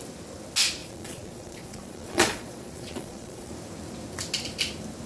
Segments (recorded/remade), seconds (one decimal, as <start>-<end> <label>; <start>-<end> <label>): 0.0-0.8 recorded; 0.8-3.5 remade; 3.5-5.1 recorded